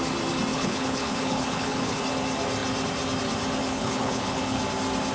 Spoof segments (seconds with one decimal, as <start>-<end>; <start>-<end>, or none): 0.5-2.0; 3.6-4.6